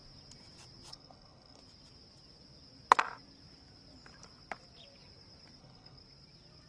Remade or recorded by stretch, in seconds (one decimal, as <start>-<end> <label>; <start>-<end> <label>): 0.0-0.9 recorded; 0.9-1.6 remade; 1.6-5.6 recorded; 5.6-6.0 remade; 6.0-6.7 recorded